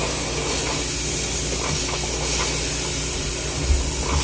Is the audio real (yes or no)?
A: yes